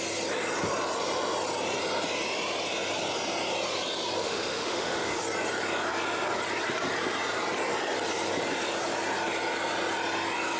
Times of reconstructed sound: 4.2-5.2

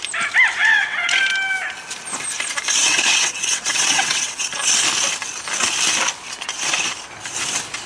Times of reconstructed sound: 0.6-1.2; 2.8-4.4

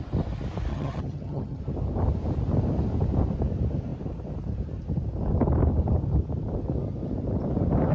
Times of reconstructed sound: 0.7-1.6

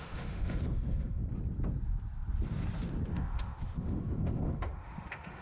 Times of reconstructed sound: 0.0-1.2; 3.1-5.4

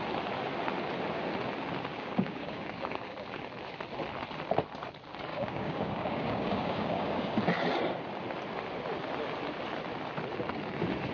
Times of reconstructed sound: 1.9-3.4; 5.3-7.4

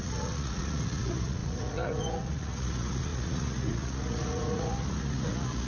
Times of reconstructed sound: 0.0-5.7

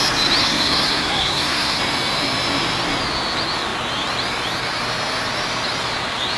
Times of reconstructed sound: 0.4-1.8